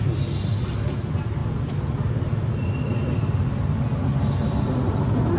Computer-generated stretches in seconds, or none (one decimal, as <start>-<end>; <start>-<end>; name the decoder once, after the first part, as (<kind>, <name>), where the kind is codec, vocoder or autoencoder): none